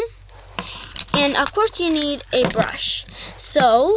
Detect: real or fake real